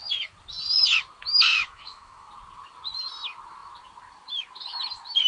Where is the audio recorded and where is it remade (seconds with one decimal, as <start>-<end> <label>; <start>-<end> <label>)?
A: 0.0-1.5 recorded; 1.5-2.3 remade; 2.3-5.3 recorded